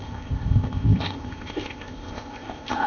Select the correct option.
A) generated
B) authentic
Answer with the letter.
A